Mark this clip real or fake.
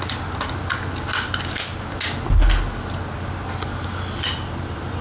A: real